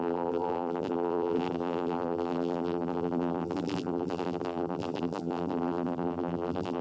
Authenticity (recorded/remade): remade